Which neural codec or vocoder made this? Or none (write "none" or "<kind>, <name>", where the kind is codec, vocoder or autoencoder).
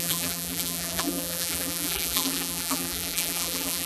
vocoder, BigVGAN v2